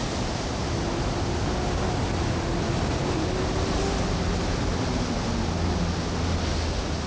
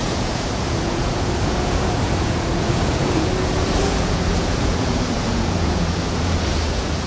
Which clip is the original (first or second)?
first